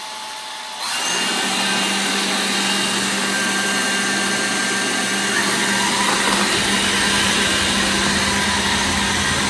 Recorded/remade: recorded